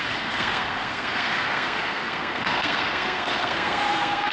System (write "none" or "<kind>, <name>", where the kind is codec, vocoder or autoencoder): codec, SNAC